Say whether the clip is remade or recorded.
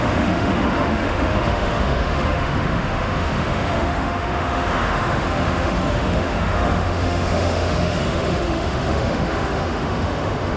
remade